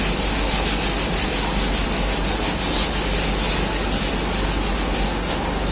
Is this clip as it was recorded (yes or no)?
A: yes